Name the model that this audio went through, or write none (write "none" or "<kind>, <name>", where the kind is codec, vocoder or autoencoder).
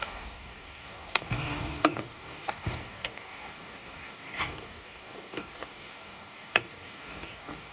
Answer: codec, DAC